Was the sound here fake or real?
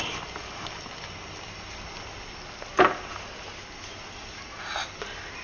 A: real